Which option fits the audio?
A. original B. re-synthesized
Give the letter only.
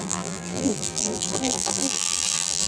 B